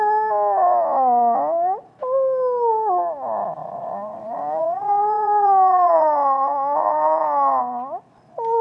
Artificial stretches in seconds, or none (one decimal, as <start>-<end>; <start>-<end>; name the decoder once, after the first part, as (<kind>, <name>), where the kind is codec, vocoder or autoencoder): 3.6-7.6 (vocoder, Vocos)